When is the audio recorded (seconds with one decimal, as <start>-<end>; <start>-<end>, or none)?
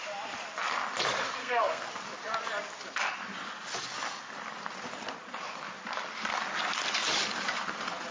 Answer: 0.0-1.4; 1.9-8.1